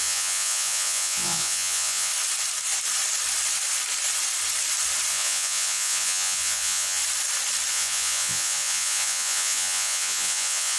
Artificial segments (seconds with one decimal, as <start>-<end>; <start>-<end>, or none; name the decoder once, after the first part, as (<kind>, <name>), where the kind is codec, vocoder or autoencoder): 0.0-2.1 (vocoder, Vocos); 5.1-7.0; 7.7-10.8